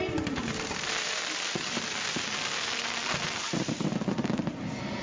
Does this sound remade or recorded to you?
remade